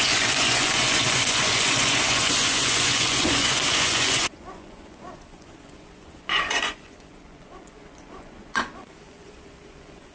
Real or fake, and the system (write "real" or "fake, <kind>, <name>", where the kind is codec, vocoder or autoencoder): fake, vocoder, Vocos